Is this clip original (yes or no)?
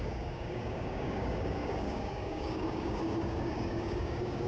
no